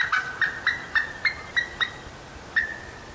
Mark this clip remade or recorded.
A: recorded